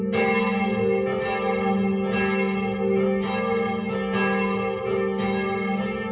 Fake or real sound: real